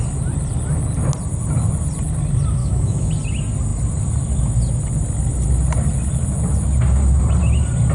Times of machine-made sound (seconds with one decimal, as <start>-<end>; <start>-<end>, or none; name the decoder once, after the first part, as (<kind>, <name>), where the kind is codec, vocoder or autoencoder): 2.6-3.1 (autoencoder, DAC-VAE)